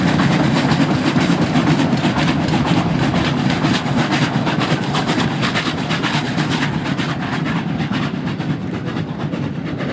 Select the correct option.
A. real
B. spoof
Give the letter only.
A